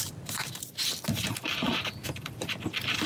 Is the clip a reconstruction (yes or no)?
yes